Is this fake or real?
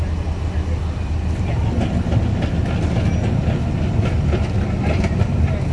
real